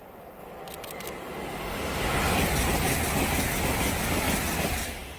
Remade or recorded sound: recorded